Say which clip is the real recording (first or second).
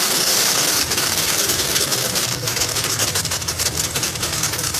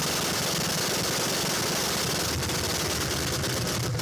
second